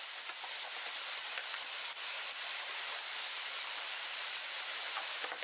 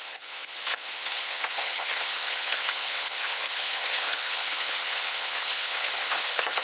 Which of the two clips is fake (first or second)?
second